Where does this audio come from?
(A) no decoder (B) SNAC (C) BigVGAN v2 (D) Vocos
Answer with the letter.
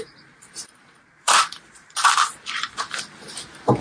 C